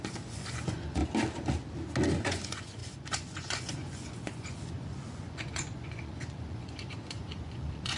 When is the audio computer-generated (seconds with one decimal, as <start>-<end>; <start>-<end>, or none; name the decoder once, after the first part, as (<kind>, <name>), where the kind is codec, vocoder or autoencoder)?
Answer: 0.0-1.0 (vocoder, Vocos); 2.2-8.0